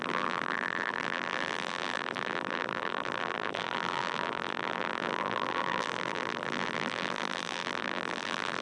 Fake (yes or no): yes